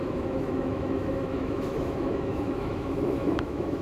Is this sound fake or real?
fake